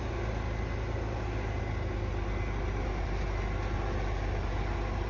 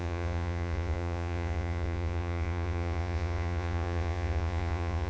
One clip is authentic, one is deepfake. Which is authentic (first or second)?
first